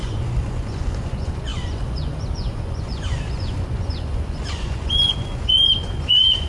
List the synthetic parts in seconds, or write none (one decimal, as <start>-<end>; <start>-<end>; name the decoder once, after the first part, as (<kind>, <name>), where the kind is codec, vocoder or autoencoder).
0.0-6.5 (vocoder, Vocos)